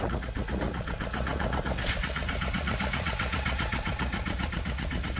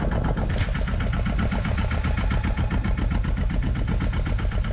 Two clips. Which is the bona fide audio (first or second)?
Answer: second